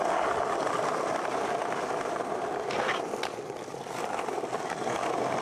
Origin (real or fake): fake